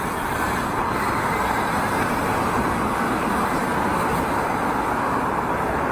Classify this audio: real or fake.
real